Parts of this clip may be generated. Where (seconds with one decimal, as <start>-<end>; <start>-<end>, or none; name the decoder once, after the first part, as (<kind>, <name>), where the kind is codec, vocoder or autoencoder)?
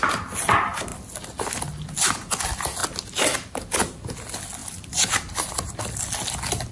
4.6-5.8 (vocoder, BigVGAN v2)